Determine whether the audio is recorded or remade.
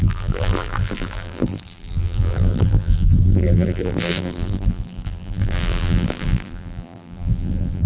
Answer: remade